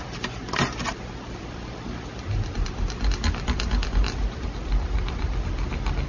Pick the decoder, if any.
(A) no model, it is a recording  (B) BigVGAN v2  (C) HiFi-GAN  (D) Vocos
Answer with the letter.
A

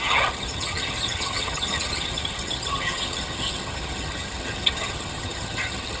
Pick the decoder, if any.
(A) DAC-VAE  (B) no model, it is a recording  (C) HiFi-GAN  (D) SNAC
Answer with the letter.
C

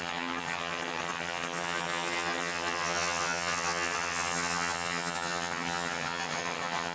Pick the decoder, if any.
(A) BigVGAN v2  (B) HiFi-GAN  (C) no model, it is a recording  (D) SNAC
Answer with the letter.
B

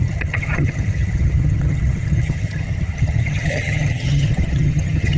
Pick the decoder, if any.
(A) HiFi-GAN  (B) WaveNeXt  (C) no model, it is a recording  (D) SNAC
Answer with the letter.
A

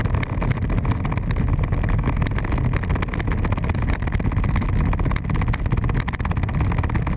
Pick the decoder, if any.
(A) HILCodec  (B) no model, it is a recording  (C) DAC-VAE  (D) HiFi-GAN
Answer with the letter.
B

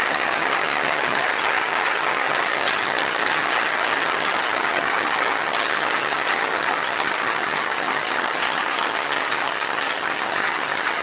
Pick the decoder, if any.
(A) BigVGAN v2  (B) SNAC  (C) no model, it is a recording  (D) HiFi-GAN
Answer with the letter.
D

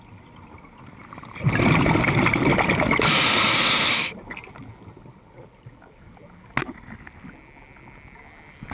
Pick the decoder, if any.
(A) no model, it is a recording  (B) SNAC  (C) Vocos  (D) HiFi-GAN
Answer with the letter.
A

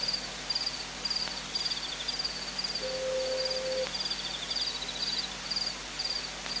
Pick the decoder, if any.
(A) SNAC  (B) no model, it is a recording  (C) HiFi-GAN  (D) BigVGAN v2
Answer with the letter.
B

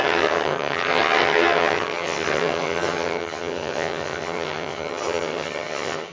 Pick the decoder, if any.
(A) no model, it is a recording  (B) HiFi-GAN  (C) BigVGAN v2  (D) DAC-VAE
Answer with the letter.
B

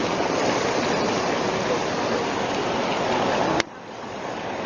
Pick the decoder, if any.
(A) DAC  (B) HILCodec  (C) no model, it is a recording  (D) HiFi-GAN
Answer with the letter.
C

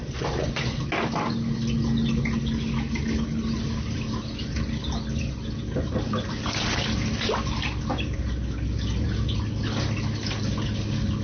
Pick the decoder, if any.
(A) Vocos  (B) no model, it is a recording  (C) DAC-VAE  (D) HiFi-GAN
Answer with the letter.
B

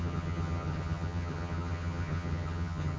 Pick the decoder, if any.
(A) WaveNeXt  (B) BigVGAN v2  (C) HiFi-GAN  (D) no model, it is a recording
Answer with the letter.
C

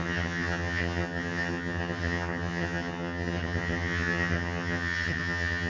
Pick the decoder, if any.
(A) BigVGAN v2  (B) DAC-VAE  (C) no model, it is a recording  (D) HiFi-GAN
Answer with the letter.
D